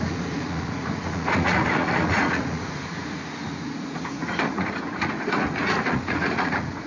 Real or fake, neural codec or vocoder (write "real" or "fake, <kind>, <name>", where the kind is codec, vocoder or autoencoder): fake, vocoder, Vocos